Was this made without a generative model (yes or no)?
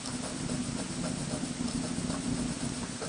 yes